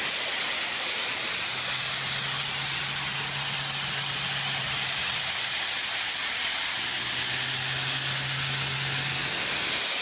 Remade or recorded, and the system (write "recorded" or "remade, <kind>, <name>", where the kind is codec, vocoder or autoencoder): recorded